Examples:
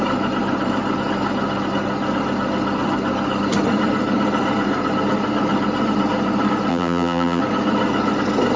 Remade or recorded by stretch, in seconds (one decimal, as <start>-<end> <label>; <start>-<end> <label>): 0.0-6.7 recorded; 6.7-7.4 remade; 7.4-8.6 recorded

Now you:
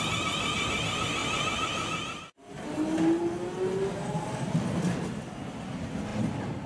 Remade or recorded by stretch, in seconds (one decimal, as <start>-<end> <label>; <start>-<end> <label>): 0.0-6.7 recorded

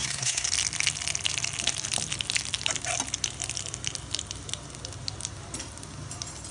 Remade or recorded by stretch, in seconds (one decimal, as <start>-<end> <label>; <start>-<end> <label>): 0.0-0.5 remade; 0.5-6.5 recorded